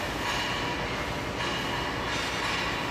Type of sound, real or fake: real